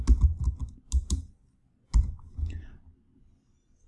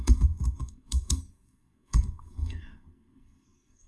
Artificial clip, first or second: second